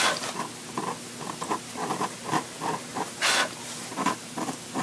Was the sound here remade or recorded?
recorded